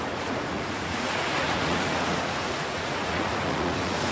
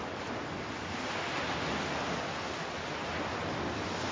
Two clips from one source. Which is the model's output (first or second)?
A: first